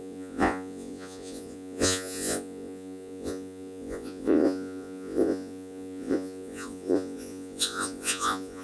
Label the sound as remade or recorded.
remade